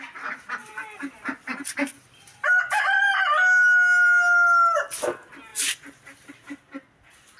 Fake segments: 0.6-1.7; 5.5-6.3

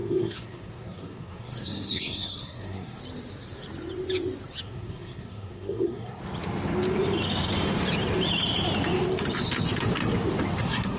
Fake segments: 0.0-3.0; 4.6-6.2; 10.6-11.0

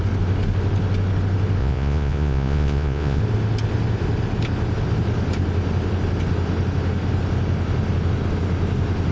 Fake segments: 1.6-3.2

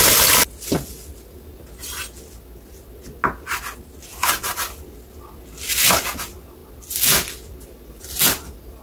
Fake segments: none